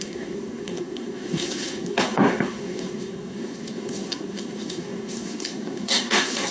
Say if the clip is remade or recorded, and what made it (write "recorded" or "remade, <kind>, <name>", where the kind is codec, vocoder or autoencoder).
remade, codec, SNAC